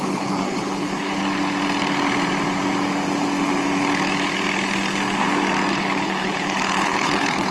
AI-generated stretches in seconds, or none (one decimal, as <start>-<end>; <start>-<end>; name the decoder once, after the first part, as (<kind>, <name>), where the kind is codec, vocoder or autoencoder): 0.0-1.2 (codec, HILCodec); 5.7-7.5